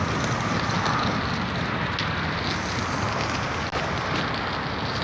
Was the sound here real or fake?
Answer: real